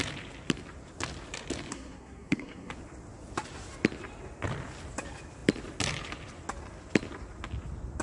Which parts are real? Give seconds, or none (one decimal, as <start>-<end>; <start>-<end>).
0.0-1.7; 2.7-8.0